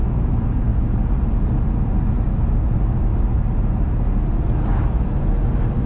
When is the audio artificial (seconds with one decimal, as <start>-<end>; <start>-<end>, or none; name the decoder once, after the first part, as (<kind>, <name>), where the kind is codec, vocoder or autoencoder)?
none